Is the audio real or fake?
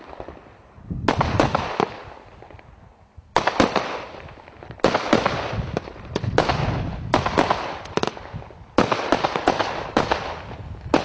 real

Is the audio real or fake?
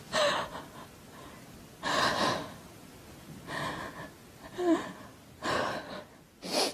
real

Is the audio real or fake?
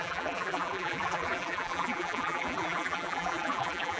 fake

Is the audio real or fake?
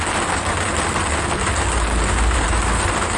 real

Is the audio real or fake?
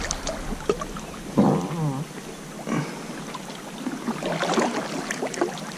real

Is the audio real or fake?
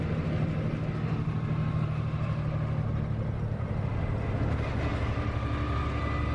real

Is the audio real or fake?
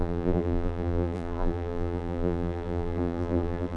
fake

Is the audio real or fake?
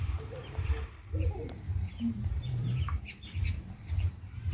fake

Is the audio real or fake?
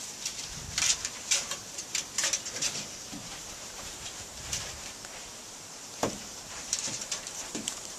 fake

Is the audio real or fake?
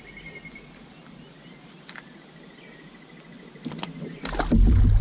real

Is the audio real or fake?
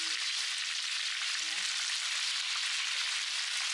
real